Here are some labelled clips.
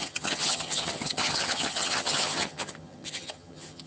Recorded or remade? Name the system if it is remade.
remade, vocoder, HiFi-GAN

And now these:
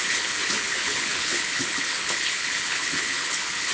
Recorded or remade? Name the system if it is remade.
remade, codec, HILCodec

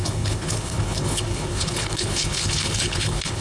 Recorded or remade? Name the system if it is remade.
remade, codec, HILCodec